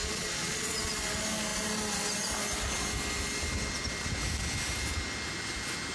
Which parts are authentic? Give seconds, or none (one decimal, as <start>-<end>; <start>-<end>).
0.9-5.9

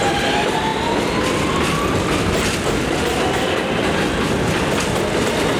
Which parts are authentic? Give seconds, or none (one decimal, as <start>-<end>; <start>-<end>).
0.0-5.6

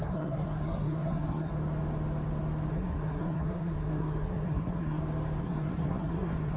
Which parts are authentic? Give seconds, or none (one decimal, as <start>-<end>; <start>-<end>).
1.5-2.7; 5.0-5.4